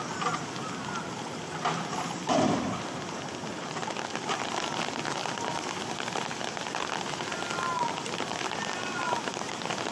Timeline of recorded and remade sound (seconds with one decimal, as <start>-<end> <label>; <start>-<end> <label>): 0.0-9.9 recorded